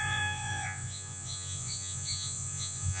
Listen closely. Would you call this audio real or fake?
fake